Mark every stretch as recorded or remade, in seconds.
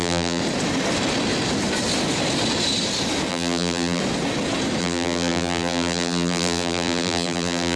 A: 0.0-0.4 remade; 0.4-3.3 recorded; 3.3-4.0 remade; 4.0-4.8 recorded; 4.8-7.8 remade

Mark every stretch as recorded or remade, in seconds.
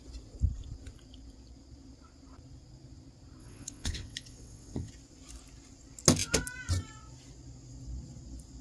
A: 0.0-3.4 recorded; 3.4-4.9 remade; 4.9-8.6 recorded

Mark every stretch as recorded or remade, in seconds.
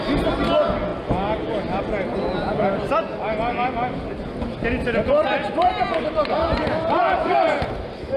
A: 0.0-5.4 recorded; 5.4-7.7 remade; 7.7-8.2 recorded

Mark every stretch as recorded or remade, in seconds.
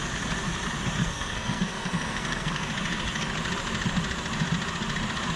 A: 0.0-1.0 recorded; 1.0-2.7 remade; 2.7-5.4 recorded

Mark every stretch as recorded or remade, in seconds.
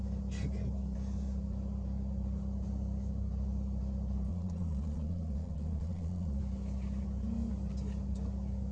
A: 0.0-4.3 recorded; 4.3-6.4 remade; 6.4-8.7 recorded